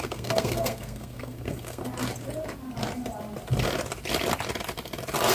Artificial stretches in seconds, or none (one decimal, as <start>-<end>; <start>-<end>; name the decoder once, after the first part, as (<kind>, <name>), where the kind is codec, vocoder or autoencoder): 0.0-1.8 (codec, SNAC)